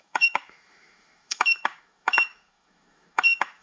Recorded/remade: remade